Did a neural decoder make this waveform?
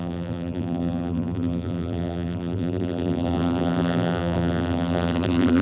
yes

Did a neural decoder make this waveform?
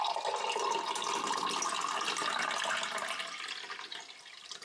no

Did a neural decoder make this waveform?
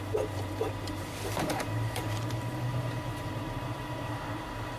yes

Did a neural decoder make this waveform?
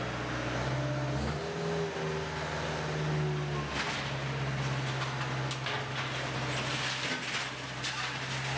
no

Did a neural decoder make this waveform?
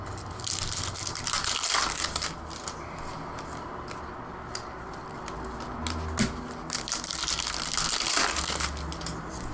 no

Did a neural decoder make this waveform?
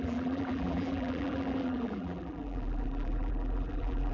yes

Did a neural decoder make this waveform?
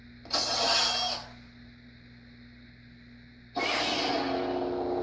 no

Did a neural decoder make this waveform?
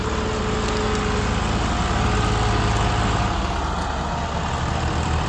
no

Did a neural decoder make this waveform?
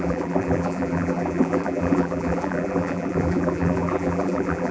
yes